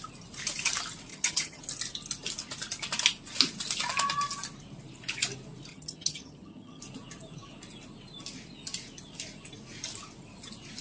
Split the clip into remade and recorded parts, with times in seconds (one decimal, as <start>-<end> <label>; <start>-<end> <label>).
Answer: 0.0-1.1 recorded; 1.1-1.6 remade; 1.6-5.7 recorded; 5.7-6.8 remade; 6.8-10.8 recorded